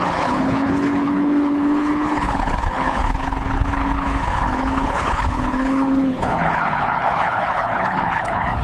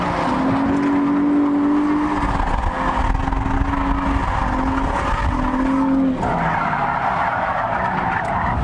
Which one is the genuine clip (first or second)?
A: second